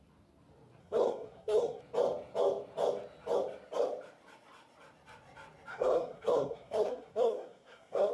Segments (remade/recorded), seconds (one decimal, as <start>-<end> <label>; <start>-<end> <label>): 0.0-0.8 recorded; 0.8-1.8 remade; 1.8-5.7 recorded; 5.7-8.1 remade